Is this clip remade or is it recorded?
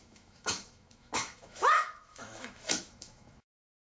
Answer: remade